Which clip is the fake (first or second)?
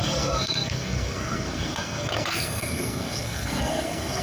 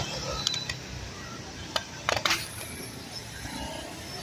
first